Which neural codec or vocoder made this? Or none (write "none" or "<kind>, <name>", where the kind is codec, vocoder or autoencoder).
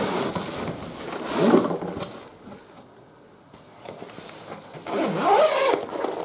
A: none